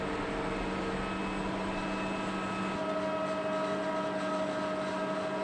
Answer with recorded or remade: recorded